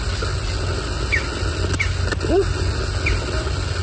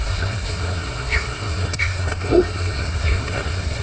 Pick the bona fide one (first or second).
first